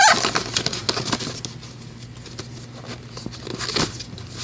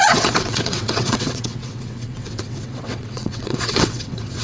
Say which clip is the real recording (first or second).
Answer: first